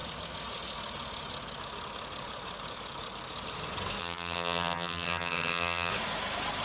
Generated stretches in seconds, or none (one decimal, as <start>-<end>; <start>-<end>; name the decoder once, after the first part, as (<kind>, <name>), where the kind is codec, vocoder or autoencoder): 4.0-5.9 (vocoder, HiFi-GAN)